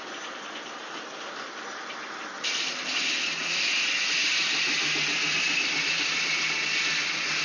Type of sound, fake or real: real